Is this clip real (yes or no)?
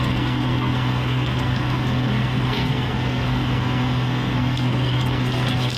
no